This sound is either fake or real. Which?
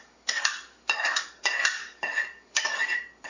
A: fake